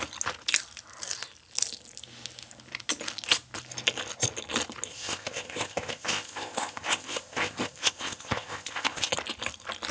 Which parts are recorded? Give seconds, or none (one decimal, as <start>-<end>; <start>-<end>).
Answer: 0.0-4.9; 9.1-9.9